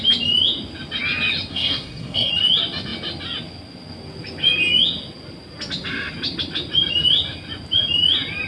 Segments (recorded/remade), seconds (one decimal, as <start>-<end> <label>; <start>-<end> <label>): 0.0-1.5 recorded; 1.5-2.3 remade; 2.3-8.5 recorded